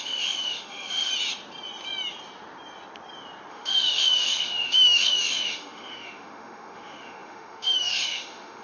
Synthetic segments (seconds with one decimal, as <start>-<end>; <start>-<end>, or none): 0.0-1.1; 3.5-8.6